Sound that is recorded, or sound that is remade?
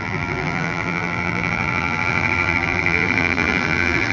remade